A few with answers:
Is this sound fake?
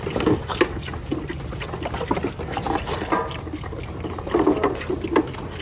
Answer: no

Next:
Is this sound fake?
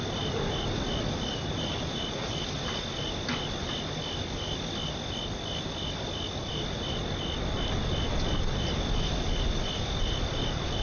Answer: no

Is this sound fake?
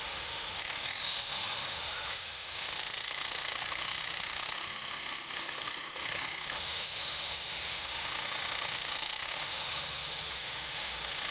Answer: yes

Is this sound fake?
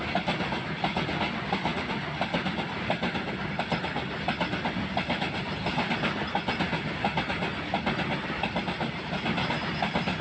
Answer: no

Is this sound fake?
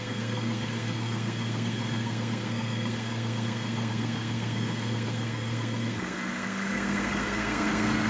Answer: yes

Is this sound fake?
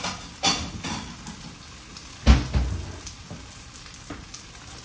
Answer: no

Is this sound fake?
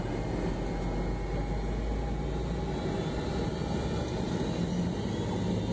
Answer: no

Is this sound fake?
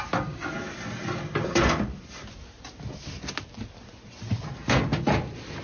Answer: no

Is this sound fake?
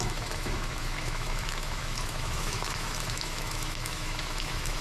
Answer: yes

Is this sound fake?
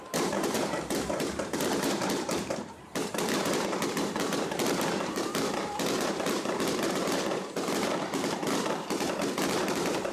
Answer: yes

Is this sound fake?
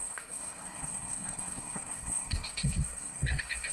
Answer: yes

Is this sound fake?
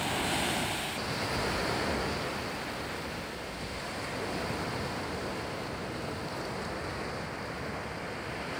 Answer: no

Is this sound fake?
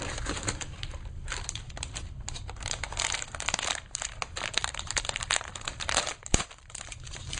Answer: yes